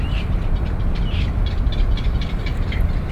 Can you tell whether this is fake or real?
fake